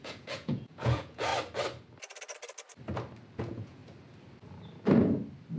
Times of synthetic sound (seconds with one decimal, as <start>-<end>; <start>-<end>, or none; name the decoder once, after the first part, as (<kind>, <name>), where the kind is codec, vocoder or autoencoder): 0.0-1.3 (vocoder, Vocos); 3.4-3.8

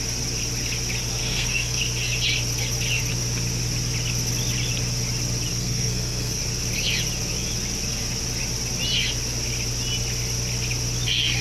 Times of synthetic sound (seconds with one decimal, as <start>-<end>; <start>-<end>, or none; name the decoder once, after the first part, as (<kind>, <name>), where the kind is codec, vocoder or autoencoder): 1.2-1.8 (codec, SNAC); 5.5-6.4

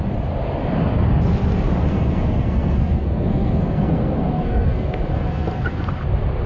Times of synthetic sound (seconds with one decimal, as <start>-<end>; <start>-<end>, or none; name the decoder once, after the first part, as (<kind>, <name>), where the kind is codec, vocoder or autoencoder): 1.9-5.8 (codec, SNAC)

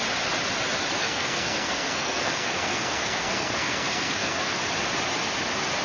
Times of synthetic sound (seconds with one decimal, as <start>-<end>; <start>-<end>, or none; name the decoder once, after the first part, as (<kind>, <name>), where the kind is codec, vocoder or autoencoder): 1.0-4.5 (codec, SNAC)